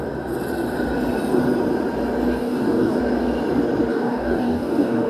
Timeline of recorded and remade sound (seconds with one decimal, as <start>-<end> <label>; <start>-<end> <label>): 0.0-2.4 recorded; 2.4-3.0 remade; 3.0-3.9 recorded; 3.9-5.1 remade